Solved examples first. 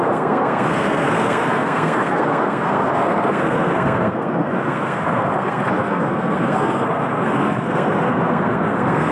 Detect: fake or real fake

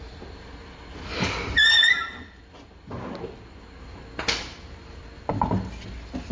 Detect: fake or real real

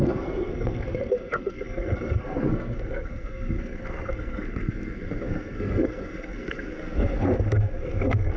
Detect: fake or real fake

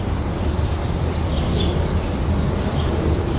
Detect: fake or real real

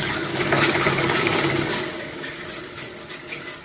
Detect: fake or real fake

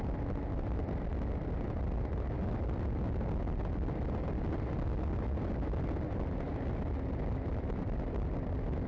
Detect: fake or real real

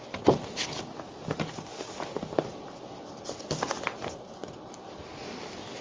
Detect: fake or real real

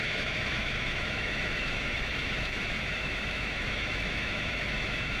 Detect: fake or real fake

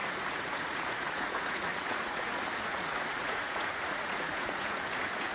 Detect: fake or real fake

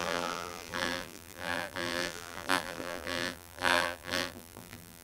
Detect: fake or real fake